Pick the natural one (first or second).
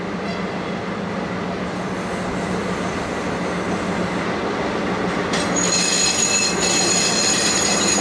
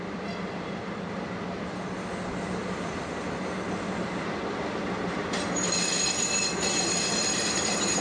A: first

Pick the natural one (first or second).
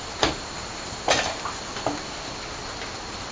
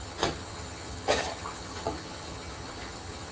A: first